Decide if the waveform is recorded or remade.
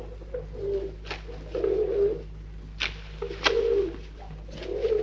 recorded